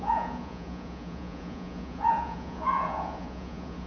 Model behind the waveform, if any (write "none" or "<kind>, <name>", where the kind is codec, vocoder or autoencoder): vocoder, Vocos